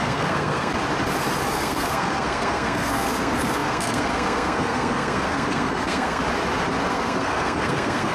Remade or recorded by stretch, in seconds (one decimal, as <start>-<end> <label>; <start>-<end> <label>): 0.0-0.7 remade; 0.7-1.5 recorded; 1.5-6.2 remade; 6.2-6.9 recorded; 6.9-8.1 remade